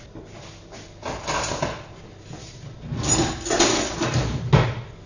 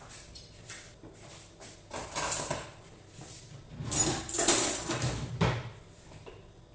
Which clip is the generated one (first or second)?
second